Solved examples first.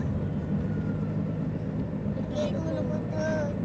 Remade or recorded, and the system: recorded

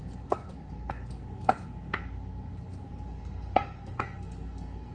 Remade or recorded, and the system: remade, codec, SNAC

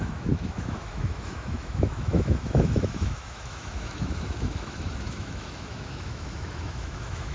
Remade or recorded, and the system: remade, autoencoder, DAC-VAE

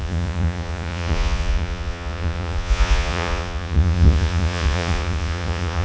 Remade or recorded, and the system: remade, vocoder, Vocos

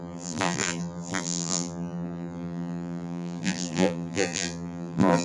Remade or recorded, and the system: remade, vocoder, BigVGAN v2